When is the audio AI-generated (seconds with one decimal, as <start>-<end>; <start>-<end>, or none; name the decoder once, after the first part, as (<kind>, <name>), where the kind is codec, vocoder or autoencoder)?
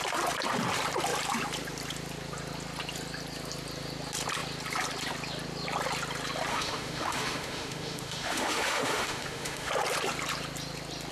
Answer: 6.5-9.7 (autoencoder, DAC-VAE)